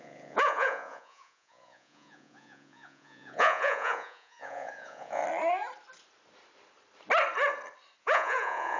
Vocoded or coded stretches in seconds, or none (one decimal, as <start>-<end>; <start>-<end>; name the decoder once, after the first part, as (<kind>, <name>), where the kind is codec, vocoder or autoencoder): 0.0-5.2 (vocoder, Vocos); 8.0-8.8